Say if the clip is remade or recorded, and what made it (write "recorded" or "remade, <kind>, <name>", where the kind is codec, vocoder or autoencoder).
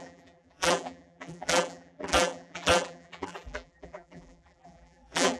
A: remade, vocoder, BigVGAN v2